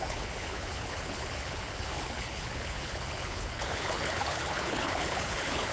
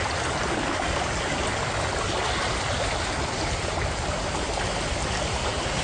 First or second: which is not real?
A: first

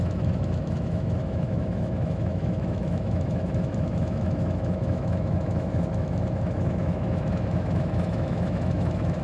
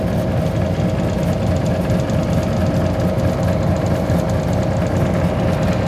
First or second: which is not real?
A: first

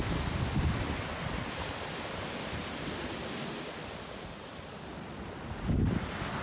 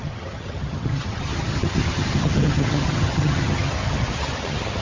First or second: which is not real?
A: second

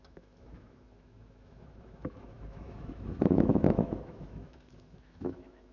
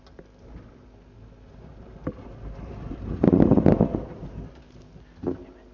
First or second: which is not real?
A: first